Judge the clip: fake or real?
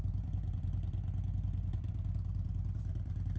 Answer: fake